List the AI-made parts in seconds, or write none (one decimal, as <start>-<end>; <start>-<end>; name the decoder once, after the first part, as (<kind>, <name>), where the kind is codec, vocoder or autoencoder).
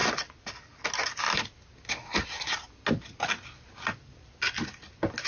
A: none